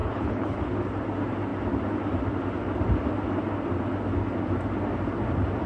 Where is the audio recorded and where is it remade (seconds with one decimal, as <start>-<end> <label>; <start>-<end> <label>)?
0.0-0.7 remade; 0.7-5.7 recorded